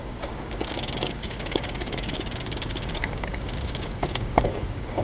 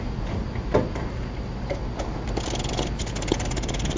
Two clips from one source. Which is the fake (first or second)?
first